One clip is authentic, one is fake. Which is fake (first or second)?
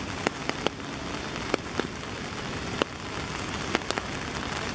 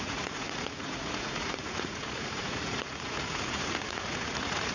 second